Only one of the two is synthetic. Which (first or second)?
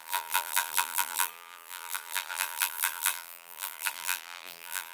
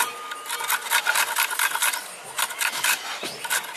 first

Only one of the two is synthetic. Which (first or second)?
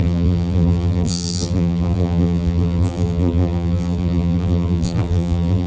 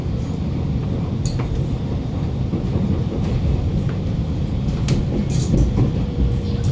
first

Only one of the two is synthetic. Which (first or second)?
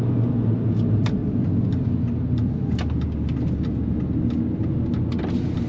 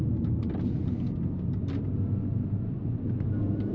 second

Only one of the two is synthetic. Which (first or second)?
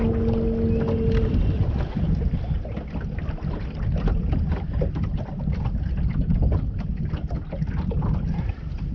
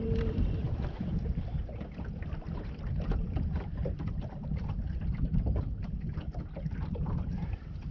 second